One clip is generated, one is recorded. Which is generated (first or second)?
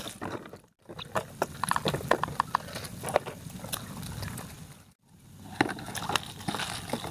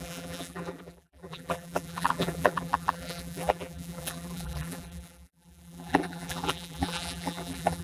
second